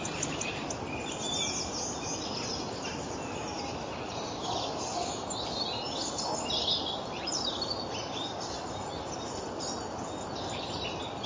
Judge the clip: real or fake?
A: real